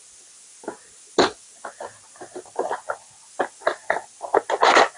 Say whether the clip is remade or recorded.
recorded